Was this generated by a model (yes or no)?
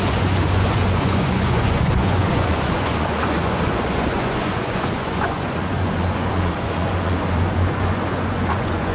yes